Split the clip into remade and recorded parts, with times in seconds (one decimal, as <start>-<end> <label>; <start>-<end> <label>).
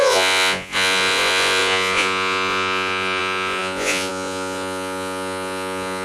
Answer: 0.0-6.0 remade